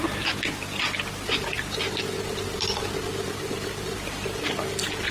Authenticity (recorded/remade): recorded